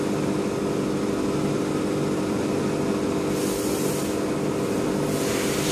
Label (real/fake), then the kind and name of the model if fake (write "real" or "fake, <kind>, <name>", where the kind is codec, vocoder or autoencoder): real